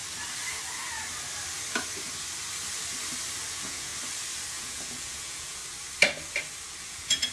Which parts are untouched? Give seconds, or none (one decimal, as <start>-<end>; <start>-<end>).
0.0-3.5; 3.9-4.5; 5.6-6.8